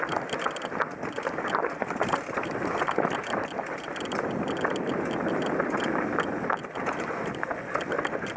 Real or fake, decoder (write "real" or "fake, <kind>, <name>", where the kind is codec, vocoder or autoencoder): real